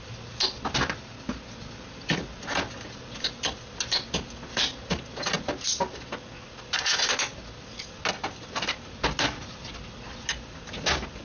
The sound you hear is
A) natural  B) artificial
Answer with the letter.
A